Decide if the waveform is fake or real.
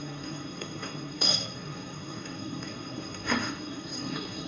fake